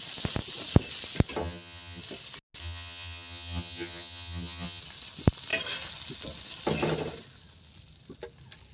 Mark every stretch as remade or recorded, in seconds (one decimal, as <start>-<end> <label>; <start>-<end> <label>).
0.0-1.4 recorded; 1.4-2.0 remade; 2.0-2.6 recorded; 2.6-4.8 remade; 4.8-8.7 recorded